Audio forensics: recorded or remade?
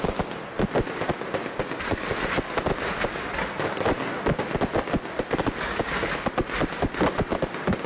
recorded